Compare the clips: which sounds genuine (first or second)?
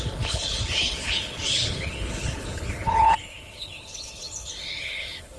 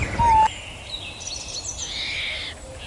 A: second